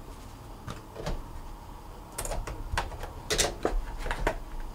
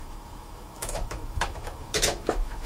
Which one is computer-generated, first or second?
second